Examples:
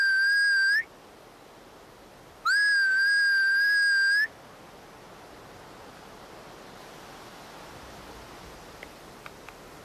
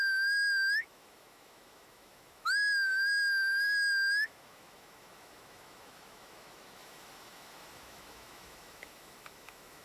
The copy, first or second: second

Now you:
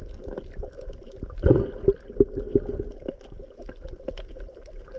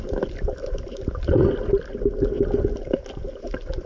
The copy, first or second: second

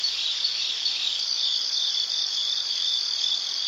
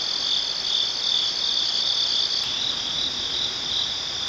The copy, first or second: first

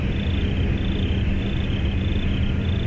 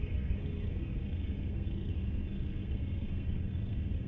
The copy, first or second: second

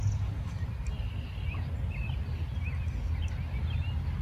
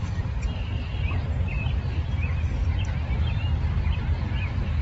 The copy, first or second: second